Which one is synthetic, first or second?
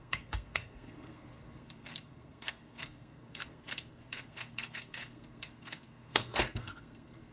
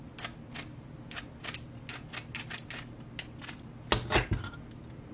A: first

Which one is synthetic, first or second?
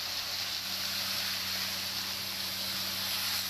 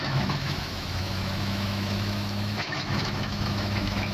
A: second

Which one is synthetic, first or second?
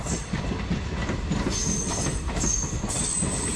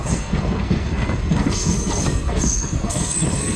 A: second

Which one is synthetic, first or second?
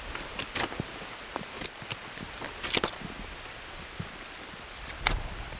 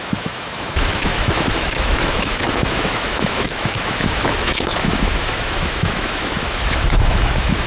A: second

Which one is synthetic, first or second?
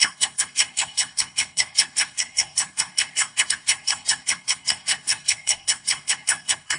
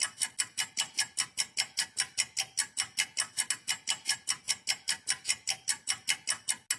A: first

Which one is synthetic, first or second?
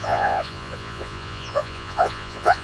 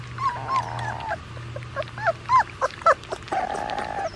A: first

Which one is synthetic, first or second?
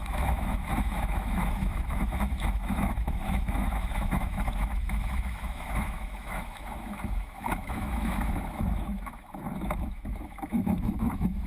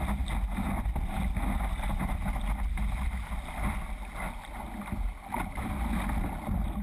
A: first